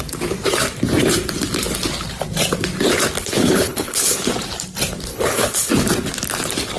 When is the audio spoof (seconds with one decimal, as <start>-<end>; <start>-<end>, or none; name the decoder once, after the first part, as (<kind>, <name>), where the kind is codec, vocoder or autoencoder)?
3.2-4.2 (codec, HILCodec); 5.1-5.7